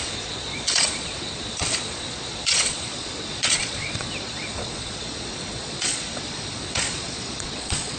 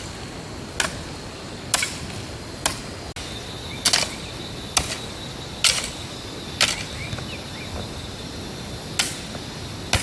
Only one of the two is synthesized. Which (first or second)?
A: first